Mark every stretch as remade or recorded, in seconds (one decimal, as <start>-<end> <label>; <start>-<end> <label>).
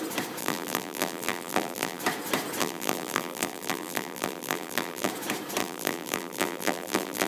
0.0-0.4 recorded; 0.4-2.0 remade; 2.0-2.6 recorded; 2.6-5.1 remade; 5.1-5.6 recorded; 5.6-7.3 remade